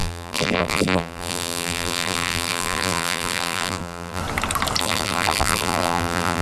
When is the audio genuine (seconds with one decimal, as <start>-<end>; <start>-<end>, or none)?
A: 4.2-4.8